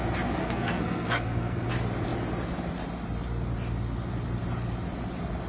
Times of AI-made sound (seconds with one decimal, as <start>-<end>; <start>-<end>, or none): 0.4-1.7